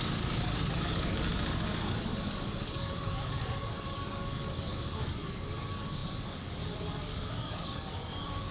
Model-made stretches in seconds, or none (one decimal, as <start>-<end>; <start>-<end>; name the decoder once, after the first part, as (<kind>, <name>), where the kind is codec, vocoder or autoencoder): 0.0-1.3 (codec, DAC); 1.8-8.5